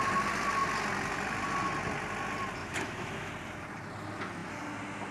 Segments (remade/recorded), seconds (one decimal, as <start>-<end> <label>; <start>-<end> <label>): 0.0-2.6 recorded; 2.6-3.3 remade; 3.3-5.1 recorded

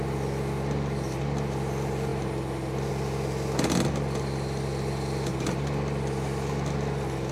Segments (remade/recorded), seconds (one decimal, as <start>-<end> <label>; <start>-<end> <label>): 0.0-7.3 recorded

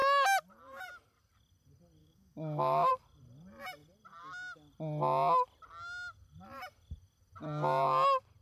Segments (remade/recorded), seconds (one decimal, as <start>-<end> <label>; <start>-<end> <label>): 0.0-2.0 recorded; 2.0-2.9 remade; 2.9-8.4 recorded

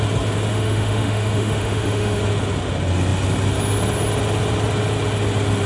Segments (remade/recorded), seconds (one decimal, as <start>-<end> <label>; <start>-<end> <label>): 0.0-0.5 recorded; 0.5-2.2 remade; 2.2-5.7 recorded

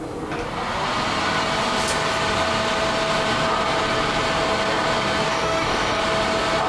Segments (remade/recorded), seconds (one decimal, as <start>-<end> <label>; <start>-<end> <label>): 0.0-5.3 recorded; 5.3-6.0 remade; 6.0-6.7 recorded

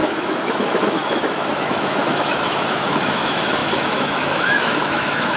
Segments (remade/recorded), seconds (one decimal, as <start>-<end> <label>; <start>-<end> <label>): 0.0-5.4 remade